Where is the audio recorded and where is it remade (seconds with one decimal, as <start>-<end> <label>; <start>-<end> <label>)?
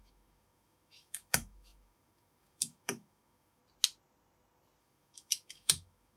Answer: 0.0-3.6 remade; 3.6-4.8 recorded; 4.8-6.2 remade